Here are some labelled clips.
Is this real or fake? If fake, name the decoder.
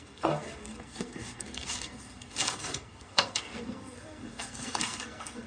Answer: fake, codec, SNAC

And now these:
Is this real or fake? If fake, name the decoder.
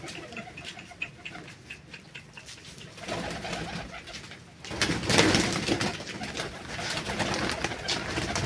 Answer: real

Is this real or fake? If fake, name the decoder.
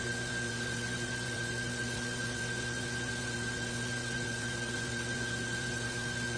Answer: fake, vocoder, Vocos